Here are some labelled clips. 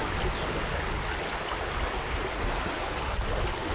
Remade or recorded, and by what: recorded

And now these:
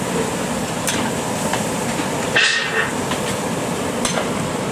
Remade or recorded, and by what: recorded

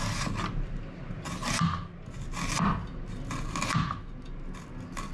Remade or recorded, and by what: recorded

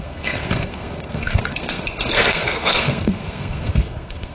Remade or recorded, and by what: remade, codec, SNAC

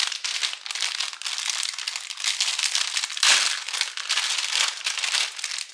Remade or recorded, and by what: recorded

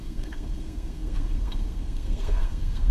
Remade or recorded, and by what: remade, codec, SNAC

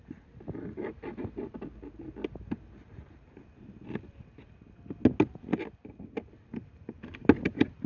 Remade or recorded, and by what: recorded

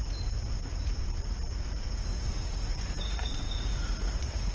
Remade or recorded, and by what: remade, vocoder, Vocos